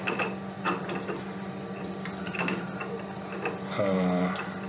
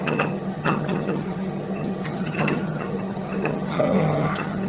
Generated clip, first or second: second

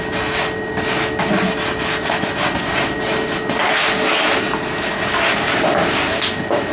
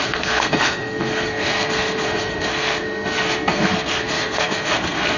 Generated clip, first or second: second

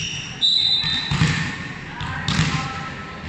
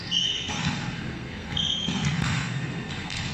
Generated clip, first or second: second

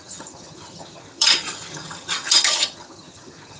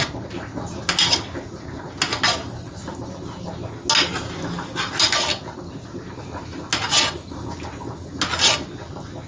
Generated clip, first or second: first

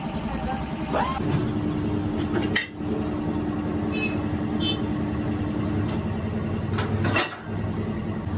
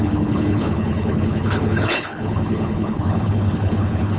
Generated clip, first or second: second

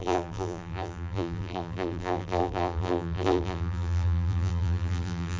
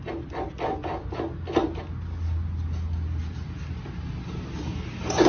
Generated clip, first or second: first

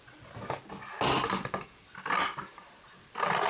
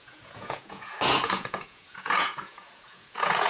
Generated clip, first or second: second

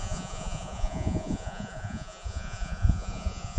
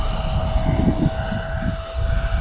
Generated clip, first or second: first